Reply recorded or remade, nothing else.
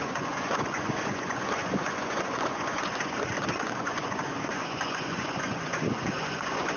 remade